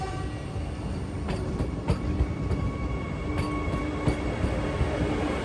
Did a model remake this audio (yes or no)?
no